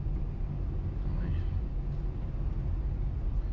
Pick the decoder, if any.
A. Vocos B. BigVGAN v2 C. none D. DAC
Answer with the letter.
C